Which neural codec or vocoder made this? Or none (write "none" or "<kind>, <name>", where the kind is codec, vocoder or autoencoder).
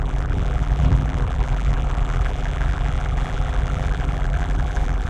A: vocoder, BigVGAN v2